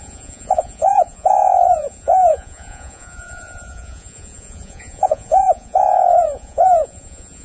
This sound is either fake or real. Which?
fake